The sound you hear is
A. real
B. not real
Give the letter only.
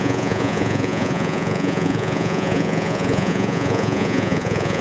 B